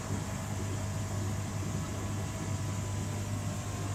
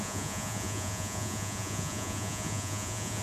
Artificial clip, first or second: second